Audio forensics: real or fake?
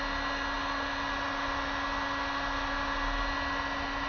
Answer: real